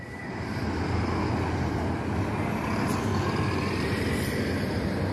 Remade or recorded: recorded